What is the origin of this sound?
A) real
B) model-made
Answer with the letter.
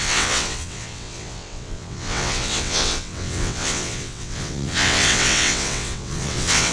B